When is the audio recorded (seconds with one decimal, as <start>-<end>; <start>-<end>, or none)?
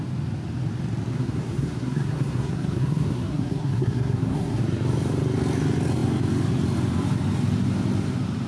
0.0-1.1; 4.6-8.5